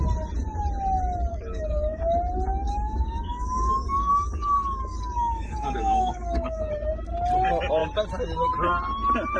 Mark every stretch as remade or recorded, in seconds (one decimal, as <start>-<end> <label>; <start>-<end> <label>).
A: 0.0-1.3 recorded; 1.3-2.0 remade; 2.0-2.5 recorded; 2.5-6.7 remade; 6.7-9.4 recorded